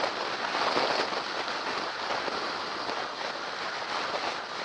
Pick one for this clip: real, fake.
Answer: real